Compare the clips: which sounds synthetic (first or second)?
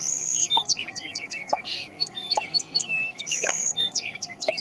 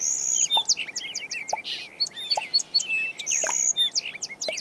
first